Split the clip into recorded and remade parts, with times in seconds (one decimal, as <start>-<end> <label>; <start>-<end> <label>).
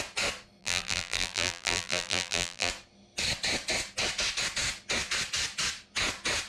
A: 0.0-0.6 recorded; 0.6-2.7 remade; 2.7-6.5 recorded